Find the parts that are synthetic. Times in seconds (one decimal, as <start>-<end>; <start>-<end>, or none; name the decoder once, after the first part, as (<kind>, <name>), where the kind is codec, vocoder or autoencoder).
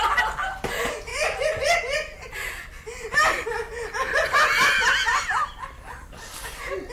none